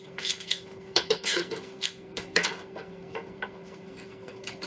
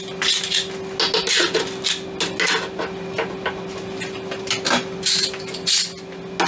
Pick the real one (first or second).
second